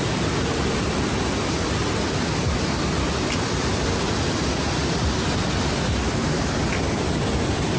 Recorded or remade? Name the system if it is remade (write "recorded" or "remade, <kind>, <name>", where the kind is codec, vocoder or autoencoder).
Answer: recorded